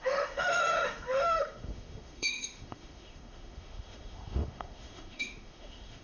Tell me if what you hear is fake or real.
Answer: fake